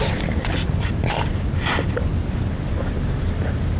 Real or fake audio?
real